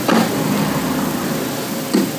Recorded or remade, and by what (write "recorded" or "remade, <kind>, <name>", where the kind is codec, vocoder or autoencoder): recorded